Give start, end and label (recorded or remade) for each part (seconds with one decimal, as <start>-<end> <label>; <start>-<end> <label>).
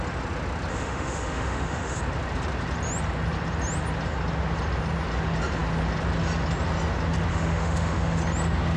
0.0-0.7 recorded; 0.7-2.0 remade; 2.0-7.3 recorded; 7.3-8.2 remade; 8.2-8.8 recorded